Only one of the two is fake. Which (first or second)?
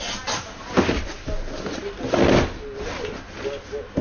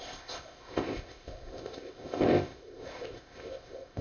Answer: second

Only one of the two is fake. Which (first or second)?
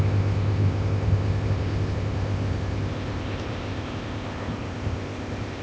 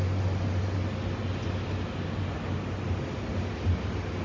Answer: first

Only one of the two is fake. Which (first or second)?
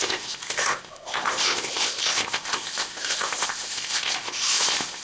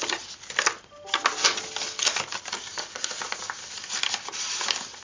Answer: first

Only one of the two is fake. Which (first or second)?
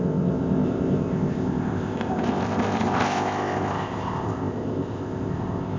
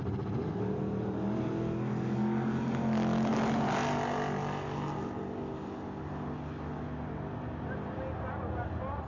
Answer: first